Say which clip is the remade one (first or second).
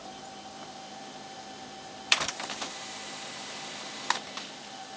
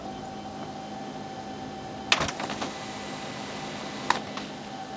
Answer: first